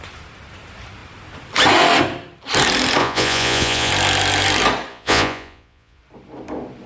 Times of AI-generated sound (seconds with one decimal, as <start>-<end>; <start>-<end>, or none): 3.0-3.9; 4.9-6.0